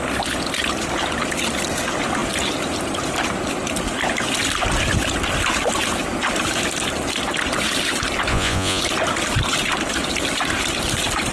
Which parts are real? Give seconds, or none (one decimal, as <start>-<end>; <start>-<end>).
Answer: 0.0-8.3; 8.8-11.3